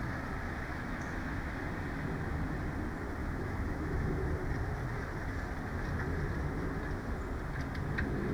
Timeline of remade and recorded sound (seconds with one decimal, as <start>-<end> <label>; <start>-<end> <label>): 0.0-0.7 recorded; 0.7-1.5 remade; 1.5-3.2 recorded; 3.2-4.2 remade; 4.2-8.3 recorded

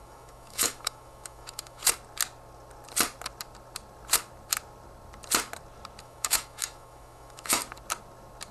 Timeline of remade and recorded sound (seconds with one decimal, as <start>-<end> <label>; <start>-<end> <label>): 0.0-1.8 remade; 1.8-6.0 recorded; 6.0-7.6 remade; 7.6-8.5 recorded